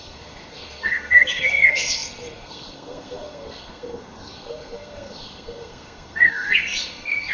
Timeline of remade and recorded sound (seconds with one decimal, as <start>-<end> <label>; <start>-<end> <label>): 0.0-7.3 remade